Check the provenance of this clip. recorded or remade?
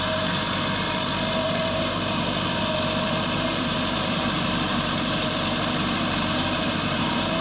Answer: remade